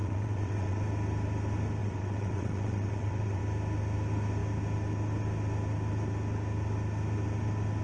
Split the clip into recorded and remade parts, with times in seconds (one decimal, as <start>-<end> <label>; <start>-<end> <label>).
0.0-0.8 remade; 0.8-1.8 recorded; 1.8-3.4 remade; 3.4-7.8 recorded

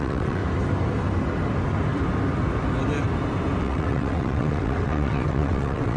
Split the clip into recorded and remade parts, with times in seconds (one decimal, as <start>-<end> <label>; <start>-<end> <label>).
0.0-0.4 remade; 0.4-3.6 recorded; 3.6-6.0 remade

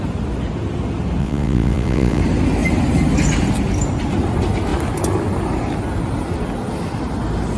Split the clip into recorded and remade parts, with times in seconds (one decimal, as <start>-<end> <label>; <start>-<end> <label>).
0.0-1.2 recorded; 1.2-2.2 remade; 2.2-7.6 recorded

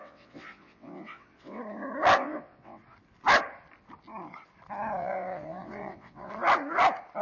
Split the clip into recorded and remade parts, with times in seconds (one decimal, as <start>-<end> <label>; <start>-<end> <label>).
0.0-1.6 remade; 1.6-2.2 recorded; 2.2-2.8 remade; 2.8-5.0 recorded; 5.0-6.3 remade; 6.3-7.2 recorded

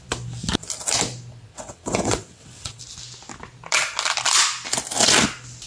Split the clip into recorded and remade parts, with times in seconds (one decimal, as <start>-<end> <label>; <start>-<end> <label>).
0.0-1.5 recorded; 1.5-2.8 remade; 2.8-5.7 recorded

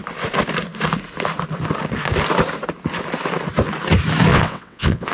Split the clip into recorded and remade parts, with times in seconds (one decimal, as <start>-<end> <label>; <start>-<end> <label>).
0.0-4.3 recorded; 4.3-5.1 remade

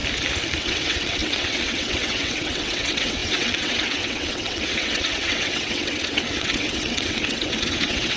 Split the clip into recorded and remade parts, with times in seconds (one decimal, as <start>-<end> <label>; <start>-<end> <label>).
0.0-0.6 recorded; 0.6-8.2 remade

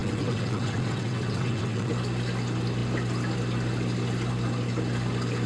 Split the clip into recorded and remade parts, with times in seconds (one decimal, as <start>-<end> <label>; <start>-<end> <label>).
0.0-1.9 remade; 1.9-5.5 recorded